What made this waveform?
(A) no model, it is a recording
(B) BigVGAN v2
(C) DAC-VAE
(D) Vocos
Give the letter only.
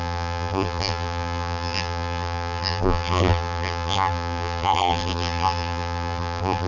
B